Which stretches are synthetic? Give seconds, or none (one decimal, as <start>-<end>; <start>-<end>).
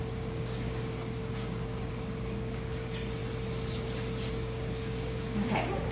0.0-3.2; 4.3-5.9